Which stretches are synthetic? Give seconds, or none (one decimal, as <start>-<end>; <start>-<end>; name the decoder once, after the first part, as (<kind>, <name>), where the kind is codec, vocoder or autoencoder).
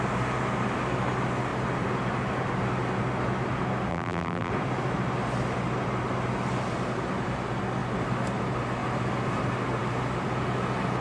3.9-4.5 (vocoder, BigVGAN v2)